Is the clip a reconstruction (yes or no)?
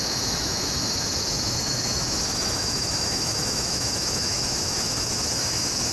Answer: yes